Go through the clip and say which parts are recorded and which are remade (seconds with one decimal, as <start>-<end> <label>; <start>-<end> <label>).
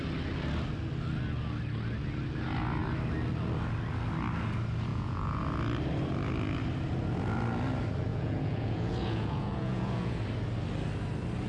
0.0-4.9 recorded; 4.9-5.4 remade; 5.4-8.1 recorded; 8.1-10.2 remade; 10.2-11.5 recorded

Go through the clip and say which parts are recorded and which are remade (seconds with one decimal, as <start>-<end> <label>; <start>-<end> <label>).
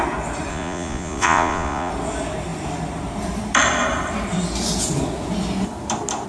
0.0-0.5 recorded; 0.5-1.9 remade; 1.9-6.3 recorded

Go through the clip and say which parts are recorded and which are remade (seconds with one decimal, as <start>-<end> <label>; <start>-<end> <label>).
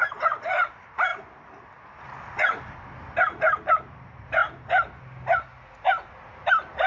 0.0-1.1 remade; 1.1-3.7 recorded; 3.7-4.4 remade; 4.4-6.1 recorded; 6.1-6.9 remade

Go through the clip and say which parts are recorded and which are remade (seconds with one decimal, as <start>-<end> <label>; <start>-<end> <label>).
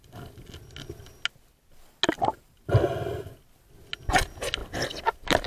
0.0-5.5 recorded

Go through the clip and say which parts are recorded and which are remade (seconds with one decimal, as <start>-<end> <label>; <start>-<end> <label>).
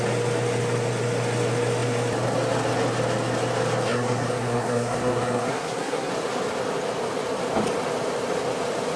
0.0-3.9 recorded; 3.9-6.1 remade; 6.1-9.0 recorded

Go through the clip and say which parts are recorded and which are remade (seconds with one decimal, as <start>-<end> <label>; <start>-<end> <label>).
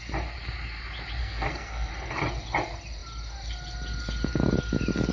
0.0-1.2 recorded; 1.2-1.9 remade; 1.9-5.1 recorded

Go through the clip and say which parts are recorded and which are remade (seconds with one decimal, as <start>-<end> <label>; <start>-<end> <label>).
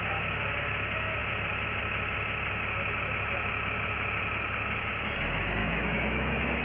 0.0-5.6 recorded; 5.6-6.6 remade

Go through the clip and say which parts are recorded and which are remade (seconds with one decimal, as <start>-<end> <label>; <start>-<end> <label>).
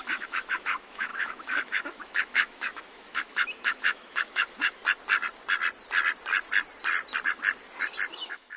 0.0-4.8 remade; 4.8-8.2 recorded; 8.2-8.6 remade